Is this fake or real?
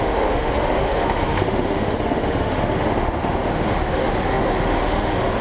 fake